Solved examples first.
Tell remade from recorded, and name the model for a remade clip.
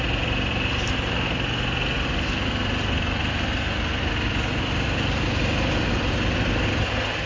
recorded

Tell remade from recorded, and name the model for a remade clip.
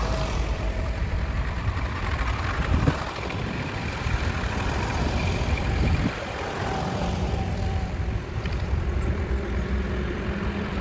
remade, vocoder, BigVGAN v2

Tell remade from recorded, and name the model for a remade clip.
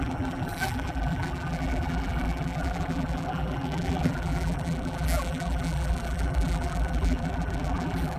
remade, vocoder, BigVGAN v2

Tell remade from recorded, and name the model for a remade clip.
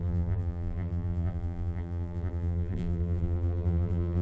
remade, vocoder, BigVGAN v2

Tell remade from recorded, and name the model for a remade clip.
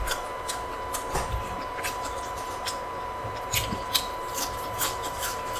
remade, vocoder, BigVGAN v2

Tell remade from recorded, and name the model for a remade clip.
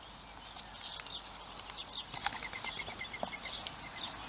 recorded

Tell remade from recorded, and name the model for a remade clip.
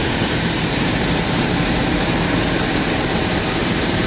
remade, vocoder, BigVGAN v2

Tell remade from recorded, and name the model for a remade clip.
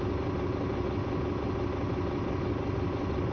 recorded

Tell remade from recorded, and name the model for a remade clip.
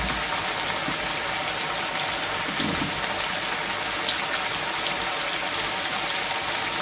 recorded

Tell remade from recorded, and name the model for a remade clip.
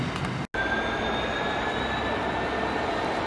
recorded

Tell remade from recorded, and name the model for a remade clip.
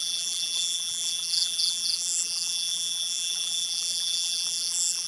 remade, vocoder, BigVGAN v2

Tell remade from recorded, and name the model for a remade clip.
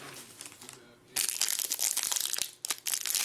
recorded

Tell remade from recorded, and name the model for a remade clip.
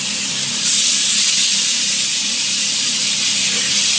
recorded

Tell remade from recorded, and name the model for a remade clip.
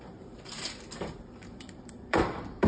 remade, vocoder, BigVGAN v2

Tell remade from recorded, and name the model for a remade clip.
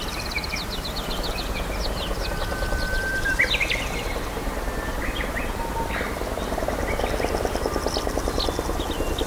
recorded